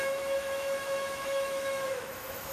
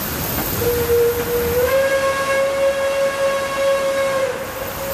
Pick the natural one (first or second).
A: second